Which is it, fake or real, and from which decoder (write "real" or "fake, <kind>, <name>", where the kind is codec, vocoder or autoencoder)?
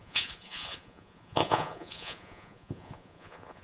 fake, vocoder, Vocos